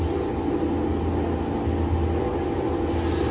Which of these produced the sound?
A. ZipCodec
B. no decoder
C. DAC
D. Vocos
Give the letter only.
B